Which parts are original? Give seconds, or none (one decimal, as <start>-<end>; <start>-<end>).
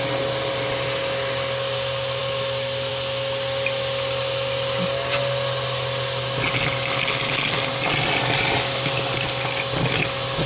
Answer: 0.0-10.5